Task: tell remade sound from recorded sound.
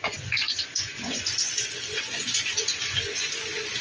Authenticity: remade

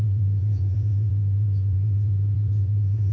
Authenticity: remade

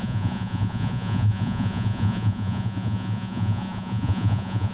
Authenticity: remade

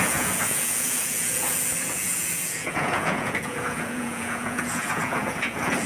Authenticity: remade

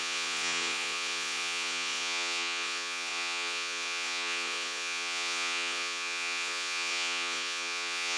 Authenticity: remade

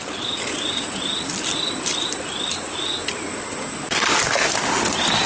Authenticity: recorded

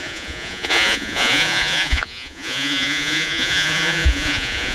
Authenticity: remade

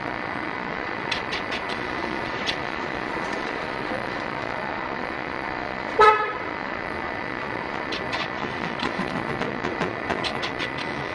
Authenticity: remade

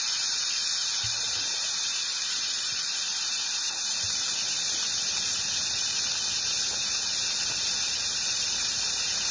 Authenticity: recorded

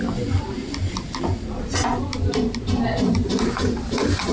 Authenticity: recorded